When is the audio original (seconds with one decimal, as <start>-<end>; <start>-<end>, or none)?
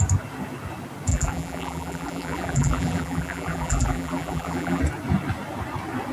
0.0-1.1; 4.8-6.1